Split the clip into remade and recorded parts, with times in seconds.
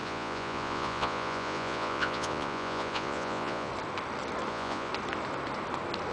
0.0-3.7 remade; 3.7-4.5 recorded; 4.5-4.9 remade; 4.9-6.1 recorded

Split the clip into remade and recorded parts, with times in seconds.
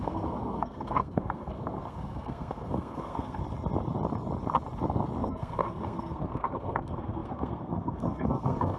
0.0-3.4 remade; 3.4-5.2 recorded; 5.2-8.8 remade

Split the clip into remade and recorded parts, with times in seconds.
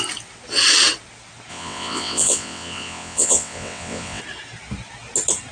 0.0-1.5 recorded; 1.5-4.2 remade; 4.2-5.5 recorded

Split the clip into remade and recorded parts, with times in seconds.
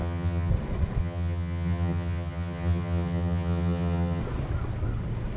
0.0-0.5 remade; 0.5-1.0 recorded; 1.0-4.2 remade; 4.2-5.4 recorded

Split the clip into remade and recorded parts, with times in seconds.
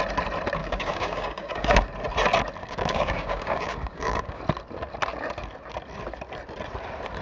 0.0-0.6 recorded; 0.6-1.9 remade; 1.9-2.6 recorded; 2.6-4.4 remade; 4.4-7.2 recorded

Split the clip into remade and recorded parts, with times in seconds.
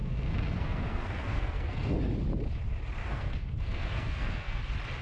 0.0-2.0 remade; 2.0-3.0 recorded; 3.0-4.6 remade; 4.6-5.0 recorded